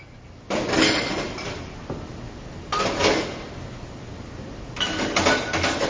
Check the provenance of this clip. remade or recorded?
recorded